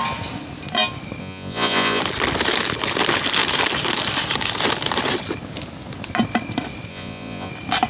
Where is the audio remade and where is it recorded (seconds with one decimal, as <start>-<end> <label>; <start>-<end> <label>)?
0.0-1.2 recorded; 1.2-2.0 remade; 2.0-6.9 recorded; 6.9-7.5 remade; 7.5-7.9 recorded